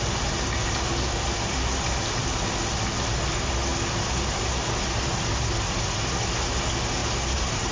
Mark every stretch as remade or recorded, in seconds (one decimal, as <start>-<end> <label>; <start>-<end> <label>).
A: 0.0-7.0 recorded; 7.0-7.7 remade